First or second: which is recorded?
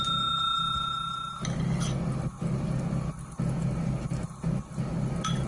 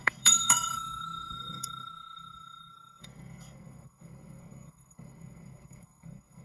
first